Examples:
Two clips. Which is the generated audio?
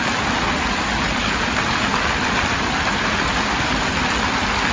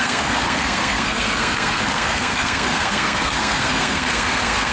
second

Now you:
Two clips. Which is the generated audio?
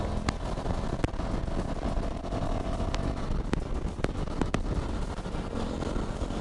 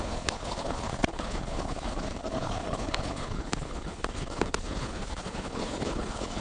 second